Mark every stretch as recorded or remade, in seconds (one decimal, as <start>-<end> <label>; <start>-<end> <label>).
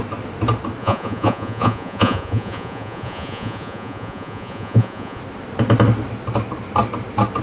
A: 0.0-0.8 recorded; 0.8-5.2 remade; 5.2-7.4 recorded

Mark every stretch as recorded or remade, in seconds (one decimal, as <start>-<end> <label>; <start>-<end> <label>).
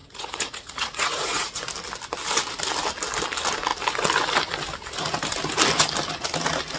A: 0.0-1.6 remade; 1.6-6.8 recorded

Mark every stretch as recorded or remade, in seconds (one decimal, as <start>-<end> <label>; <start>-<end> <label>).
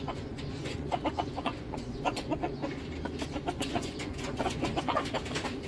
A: 0.0-2.6 remade; 2.6-3.5 recorded; 3.5-5.0 remade; 5.0-5.7 recorded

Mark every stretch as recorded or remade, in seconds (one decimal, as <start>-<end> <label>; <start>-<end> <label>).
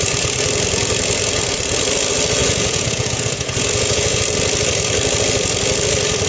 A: 0.0-2.4 recorded; 2.4-4.2 remade; 4.2-6.3 recorded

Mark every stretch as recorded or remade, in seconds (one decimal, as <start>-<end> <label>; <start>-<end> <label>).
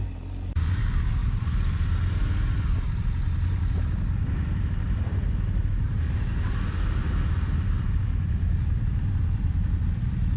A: 0.0-10.4 recorded